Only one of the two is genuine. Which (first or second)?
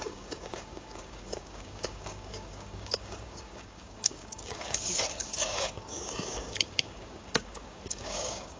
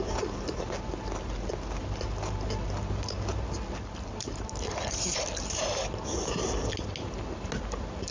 second